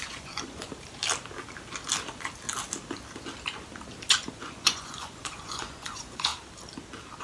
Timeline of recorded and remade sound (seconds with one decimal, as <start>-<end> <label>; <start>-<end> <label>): 0.0-0.7 remade; 0.7-4.3 recorded; 4.3-6.3 remade; 6.3-7.2 recorded